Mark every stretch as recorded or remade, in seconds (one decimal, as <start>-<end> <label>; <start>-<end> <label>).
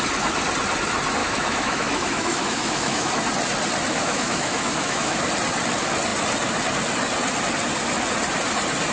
0.0-1.2 recorded; 1.2-3.1 remade; 3.1-3.9 recorded; 3.9-5.2 remade; 5.2-8.9 recorded